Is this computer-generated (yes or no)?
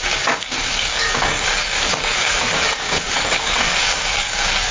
yes